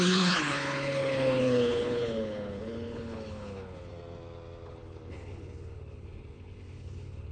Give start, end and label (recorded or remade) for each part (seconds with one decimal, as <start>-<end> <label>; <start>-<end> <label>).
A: 0.0-3.9 remade; 3.9-4.7 recorded; 4.7-7.3 remade